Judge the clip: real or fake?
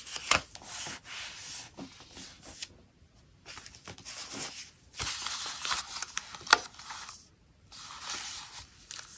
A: real